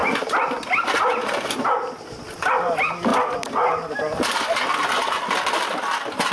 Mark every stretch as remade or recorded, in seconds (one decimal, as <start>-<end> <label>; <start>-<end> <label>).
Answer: 0.0-1.5 remade; 1.5-6.3 recorded

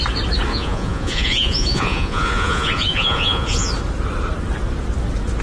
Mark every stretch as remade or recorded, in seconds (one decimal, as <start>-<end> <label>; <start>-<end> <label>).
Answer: 0.0-0.5 recorded; 0.5-3.7 remade; 3.7-5.4 recorded

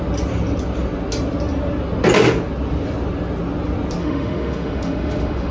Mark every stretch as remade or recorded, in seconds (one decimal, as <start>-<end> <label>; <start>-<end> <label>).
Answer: 0.0-4.0 recorded; 4.0-5.5 remade

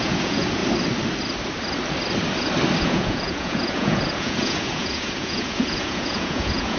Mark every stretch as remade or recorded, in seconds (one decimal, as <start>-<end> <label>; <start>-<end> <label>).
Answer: 0.0-0.6 remade; 0.6-2.8 recorded; 2.8-6.8 remade

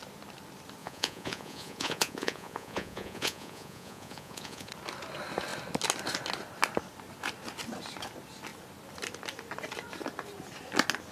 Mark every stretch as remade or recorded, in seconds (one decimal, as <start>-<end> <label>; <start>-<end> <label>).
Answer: 0.0-0.8 recorded; 0.8-4.7 remade; 4.7-11.1 recorded

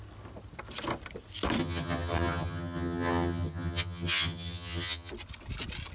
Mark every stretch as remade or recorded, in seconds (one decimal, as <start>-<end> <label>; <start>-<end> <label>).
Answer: 0.0-1.6 recorded; 1.6-5.1 remade; 5.1-5.9 recorded